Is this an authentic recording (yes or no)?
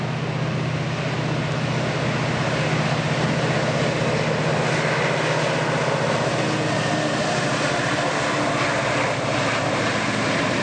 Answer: yes